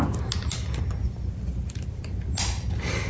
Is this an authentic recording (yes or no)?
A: yes